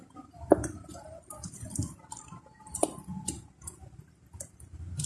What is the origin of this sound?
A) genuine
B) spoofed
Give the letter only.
B